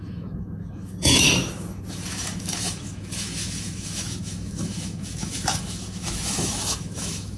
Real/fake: fake